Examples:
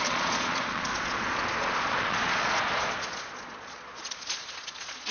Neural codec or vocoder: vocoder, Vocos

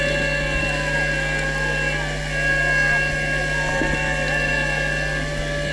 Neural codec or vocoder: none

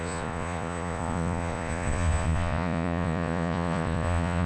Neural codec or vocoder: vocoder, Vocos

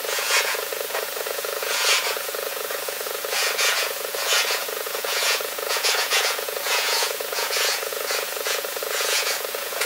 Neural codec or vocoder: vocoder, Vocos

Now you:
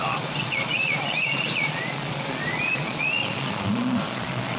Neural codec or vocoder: vocoder, Vocos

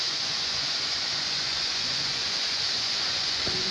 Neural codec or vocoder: vocoder, Vocos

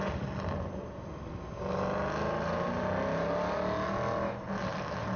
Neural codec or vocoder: none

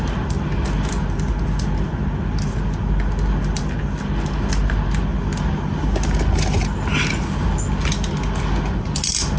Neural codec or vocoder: none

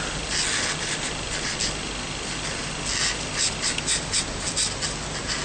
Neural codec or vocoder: none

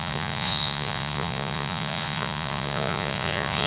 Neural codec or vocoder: vocoder, Vocos